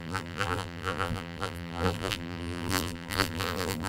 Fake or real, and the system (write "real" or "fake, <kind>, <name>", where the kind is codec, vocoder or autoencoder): fake, vocoder, BigVGAN v2